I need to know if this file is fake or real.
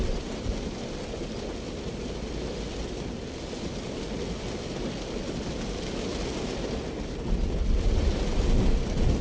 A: real